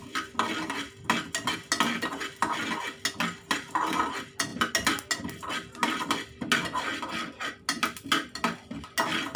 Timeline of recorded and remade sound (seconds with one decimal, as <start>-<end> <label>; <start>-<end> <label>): 0.0-9.4 recorded